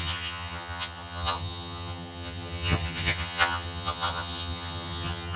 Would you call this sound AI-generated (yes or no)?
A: yes